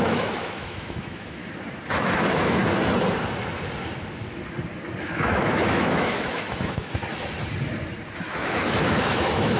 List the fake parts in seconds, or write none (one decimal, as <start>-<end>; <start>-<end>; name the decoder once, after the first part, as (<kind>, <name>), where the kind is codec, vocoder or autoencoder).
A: 0.0-1.4 (autoencoder, DAC-VAE); 2.0-2.6; 5.0-7.0; 8.3-9.6